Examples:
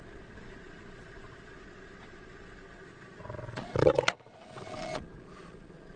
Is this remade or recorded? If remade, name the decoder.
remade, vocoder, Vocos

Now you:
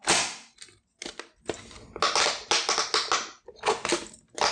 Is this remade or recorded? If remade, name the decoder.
recorded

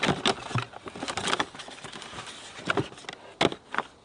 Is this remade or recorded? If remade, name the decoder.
recorded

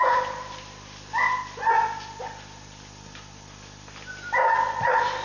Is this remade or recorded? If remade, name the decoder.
recorded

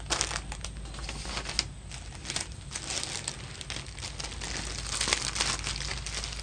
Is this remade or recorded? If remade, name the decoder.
recorded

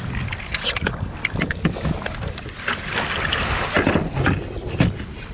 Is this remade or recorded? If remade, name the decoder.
recorded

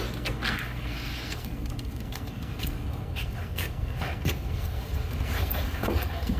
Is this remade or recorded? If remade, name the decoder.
remade, codec, SNAC